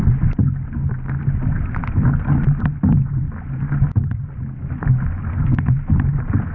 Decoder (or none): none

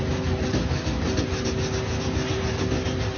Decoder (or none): none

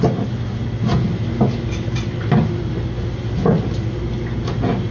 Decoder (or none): none